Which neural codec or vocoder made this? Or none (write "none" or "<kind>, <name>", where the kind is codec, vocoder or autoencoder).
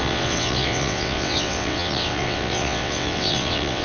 vocoder, WaveNeXt